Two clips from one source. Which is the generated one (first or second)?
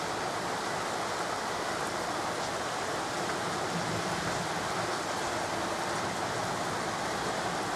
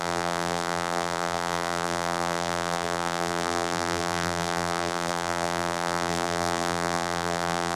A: second